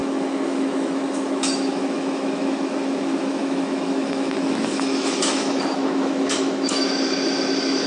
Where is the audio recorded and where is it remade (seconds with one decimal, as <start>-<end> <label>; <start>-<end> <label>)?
0.0-7.9 remade